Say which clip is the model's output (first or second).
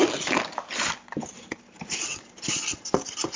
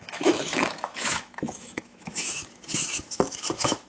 second